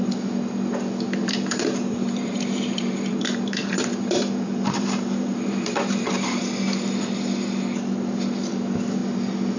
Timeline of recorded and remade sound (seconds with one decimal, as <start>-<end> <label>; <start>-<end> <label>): 0.0-1.2 recorded; 1.2-6.4 remade; 6.4-9.6 recorded